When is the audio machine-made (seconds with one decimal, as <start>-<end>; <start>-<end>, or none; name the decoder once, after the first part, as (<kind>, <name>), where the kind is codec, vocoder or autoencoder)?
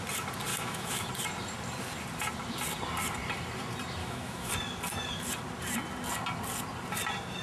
0.5-1.1 (autoencoder, DAC-VAE); 4.0-4.5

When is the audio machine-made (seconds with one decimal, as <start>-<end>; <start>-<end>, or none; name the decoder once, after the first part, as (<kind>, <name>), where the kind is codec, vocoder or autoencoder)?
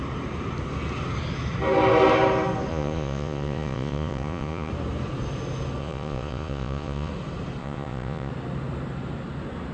2.7-4.7 (vocoder, Vocos); 5.8-7.1; 7.6-8.3